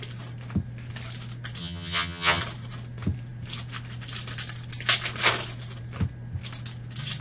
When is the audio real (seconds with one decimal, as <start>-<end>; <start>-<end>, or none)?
0.0-1.6; 2.4-7.2

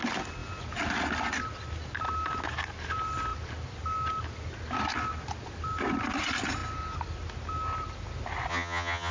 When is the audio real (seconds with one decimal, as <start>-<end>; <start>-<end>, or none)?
0.0-8.5

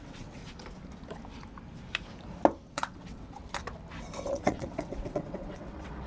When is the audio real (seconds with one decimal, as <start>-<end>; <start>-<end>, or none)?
0.4-2.7; 3.4-4.3

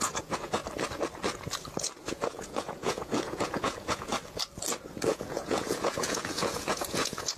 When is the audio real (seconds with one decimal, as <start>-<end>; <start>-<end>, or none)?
0.6-2.0; 4.1-5.1